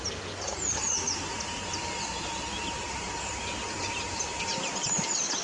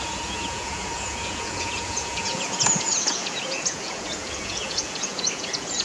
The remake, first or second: second